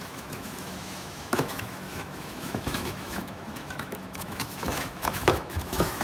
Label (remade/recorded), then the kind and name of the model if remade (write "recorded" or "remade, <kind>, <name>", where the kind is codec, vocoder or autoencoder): remade, autoencoder, DAC-VAE